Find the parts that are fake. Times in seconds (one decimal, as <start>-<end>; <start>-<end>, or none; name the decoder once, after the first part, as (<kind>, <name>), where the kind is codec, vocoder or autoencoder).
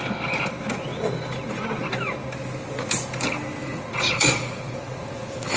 3.6-5.6 (vocoder, Vocos)